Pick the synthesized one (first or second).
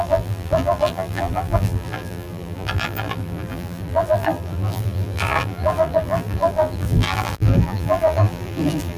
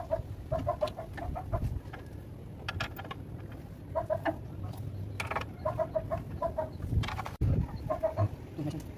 first